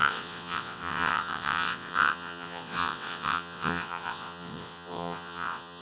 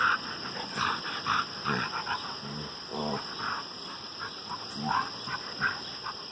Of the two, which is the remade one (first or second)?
first